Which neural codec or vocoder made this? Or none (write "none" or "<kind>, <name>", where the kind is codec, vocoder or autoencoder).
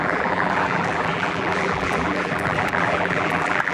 vocoder, BigVGAN v2